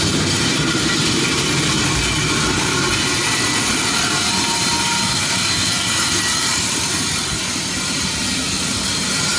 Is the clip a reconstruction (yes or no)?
yes